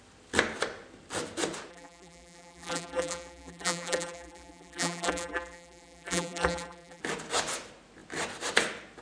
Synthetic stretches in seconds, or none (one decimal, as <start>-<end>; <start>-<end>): 1.7-7.0